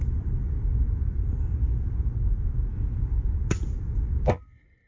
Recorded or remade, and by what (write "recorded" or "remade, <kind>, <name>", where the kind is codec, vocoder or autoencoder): recorded